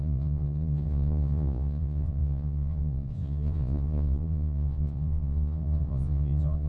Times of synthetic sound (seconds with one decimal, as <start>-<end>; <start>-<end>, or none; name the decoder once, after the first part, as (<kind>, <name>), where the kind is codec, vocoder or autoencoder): 0.0-6.7 (vocoder, Vocos)

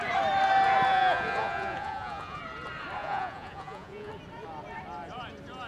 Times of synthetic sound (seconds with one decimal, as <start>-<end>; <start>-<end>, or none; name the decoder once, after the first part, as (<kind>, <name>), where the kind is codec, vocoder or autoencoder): 0.9-2.4 (vocoder, Vocos); 3.0-4.1

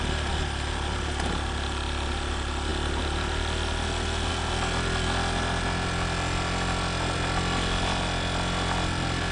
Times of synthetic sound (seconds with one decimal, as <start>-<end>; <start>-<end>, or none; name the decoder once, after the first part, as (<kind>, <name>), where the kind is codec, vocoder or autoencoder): none

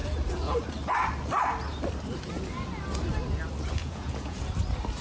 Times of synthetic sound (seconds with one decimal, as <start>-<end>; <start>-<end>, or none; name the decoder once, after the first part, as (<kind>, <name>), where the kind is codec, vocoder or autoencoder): 3.8-4.4 (vocoder, Vocos)

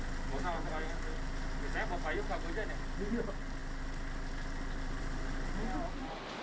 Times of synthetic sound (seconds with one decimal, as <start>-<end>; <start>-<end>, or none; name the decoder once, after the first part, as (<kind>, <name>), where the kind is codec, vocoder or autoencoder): none

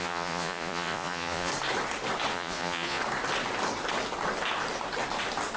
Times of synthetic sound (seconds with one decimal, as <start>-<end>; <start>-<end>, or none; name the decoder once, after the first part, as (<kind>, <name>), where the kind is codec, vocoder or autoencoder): 0.0-1.5 (vocoder, Vocos); 2.3-3.0

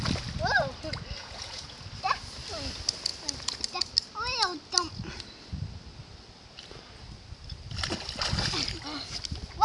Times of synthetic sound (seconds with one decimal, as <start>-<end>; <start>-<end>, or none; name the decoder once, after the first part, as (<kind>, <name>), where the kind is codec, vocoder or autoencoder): 1.2-1.8 (vocoder, Vocos)